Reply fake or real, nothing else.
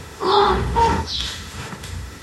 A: fake